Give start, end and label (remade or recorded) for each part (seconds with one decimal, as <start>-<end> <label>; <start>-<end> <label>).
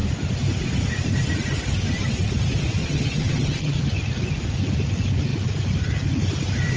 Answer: 0.0-2.8 recorded; 2.8-3.8 remade; 3.8-6.8 recorded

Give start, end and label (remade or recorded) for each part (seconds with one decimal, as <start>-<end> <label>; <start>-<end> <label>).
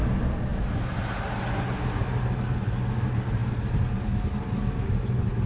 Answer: 0.0-5.5 recorded